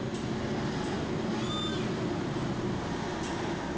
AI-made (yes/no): no